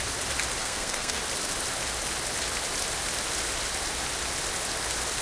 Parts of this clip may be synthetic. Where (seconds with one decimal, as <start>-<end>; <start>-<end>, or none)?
0.6-1.2

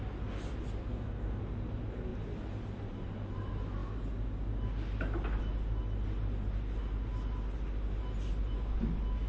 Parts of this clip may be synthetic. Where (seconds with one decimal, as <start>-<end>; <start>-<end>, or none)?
0.8-1.4